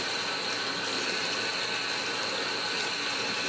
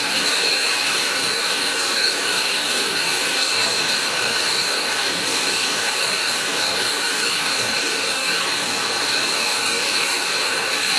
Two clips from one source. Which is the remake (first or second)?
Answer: second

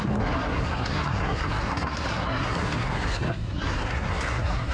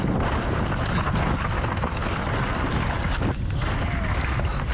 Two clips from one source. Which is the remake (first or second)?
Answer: first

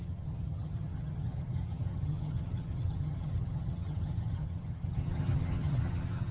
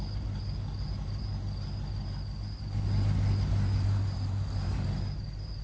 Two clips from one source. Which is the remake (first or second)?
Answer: first